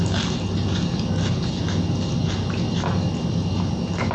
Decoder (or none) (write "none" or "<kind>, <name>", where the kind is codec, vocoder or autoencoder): none